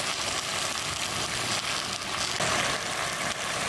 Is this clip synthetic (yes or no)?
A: no